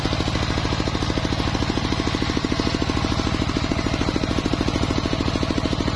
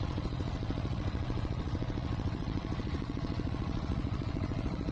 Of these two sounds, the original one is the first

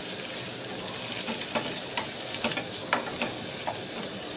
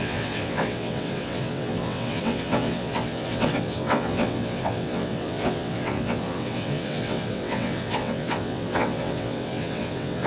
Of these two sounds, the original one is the first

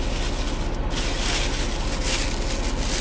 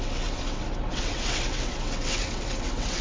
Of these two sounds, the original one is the first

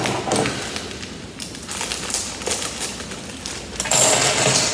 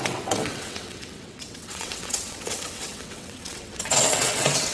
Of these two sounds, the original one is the first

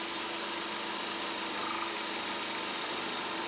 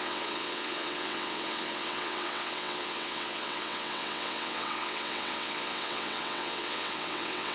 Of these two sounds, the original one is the first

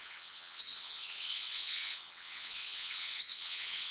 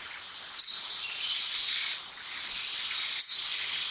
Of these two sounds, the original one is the second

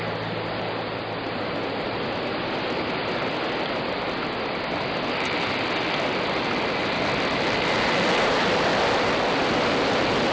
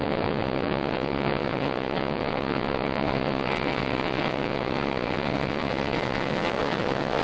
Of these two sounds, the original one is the first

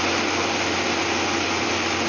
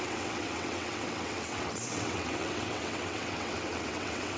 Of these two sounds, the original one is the first